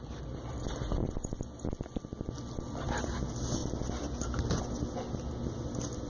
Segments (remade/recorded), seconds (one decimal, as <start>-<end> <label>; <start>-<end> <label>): 0.0-6.1 recorded